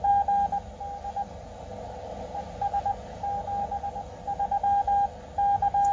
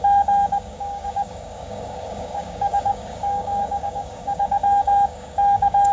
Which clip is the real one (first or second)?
first